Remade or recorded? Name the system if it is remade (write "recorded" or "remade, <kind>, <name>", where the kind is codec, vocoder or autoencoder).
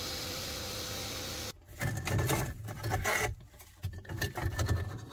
recorded